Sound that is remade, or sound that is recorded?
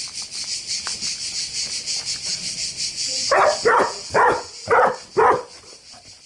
recorded